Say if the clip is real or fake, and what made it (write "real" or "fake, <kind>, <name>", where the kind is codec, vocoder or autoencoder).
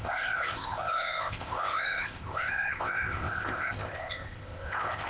fake, codec, ZipCodec